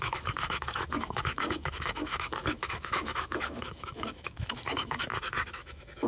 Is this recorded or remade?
remade